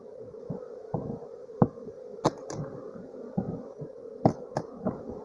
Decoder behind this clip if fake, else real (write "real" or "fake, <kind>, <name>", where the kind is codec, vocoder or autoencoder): real